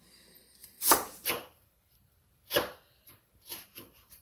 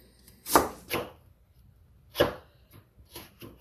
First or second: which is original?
second